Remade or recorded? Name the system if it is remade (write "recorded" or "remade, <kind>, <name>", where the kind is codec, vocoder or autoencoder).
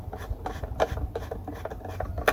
recorded